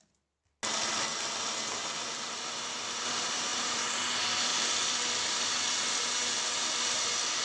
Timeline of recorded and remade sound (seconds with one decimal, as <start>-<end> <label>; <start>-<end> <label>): 0.0-3.5 recorded; 3.5-4.1 remade; 4.1-4.5 recorded; 4.5-5.5 remade; 5.5-7.4 recorded

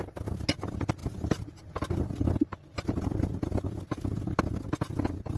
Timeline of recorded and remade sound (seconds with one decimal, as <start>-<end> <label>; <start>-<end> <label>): 0.0-5.4 recorded